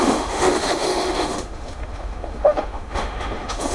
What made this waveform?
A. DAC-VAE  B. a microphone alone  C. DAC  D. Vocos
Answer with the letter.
A